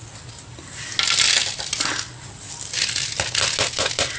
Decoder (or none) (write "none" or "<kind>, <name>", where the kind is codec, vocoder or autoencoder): none